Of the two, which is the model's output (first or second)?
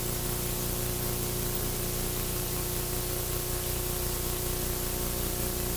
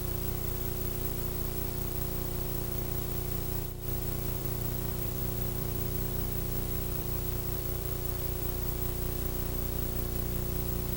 second